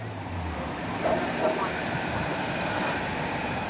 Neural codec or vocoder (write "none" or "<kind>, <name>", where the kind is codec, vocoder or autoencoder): vocoder, BigVGAN v2